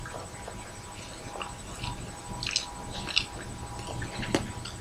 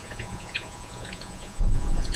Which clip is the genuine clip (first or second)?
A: first